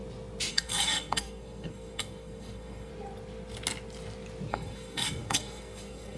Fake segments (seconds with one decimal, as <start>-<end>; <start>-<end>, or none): 0.5-2.9; 4.5-6.2

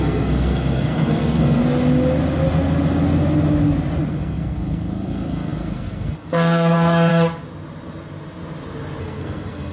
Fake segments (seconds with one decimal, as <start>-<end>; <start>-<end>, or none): 0.0-1.6; 4.1-7.1; 9.0-9.7

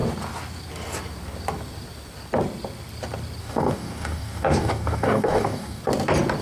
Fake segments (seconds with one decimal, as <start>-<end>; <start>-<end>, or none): 3.4-5.8

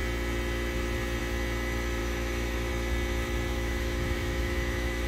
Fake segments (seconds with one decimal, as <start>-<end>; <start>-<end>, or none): 2.0-2.7; 3.5-5.1

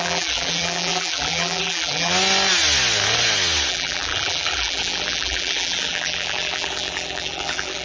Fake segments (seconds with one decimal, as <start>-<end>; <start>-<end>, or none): 0.0-2.1; 3.7-7.8

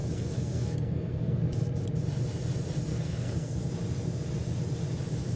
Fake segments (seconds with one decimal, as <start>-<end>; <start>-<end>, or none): 0.0-1.4; 2.9-3.6

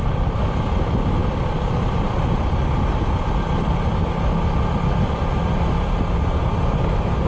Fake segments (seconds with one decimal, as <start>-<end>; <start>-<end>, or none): none